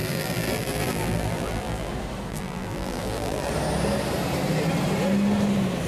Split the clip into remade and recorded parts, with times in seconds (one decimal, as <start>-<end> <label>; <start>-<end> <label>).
0.0-1.9 remade; 1.9-2.3 recorded; 2.3-3.5 remade; 3.5-5.9 recorded